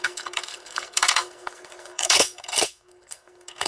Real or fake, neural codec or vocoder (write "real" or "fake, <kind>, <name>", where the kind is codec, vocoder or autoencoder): fake, codec, SNAC